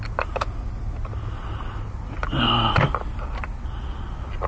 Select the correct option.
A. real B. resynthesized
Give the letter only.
A